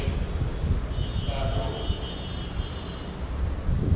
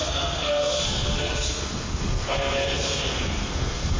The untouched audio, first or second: first